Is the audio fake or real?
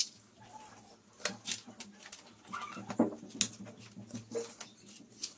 real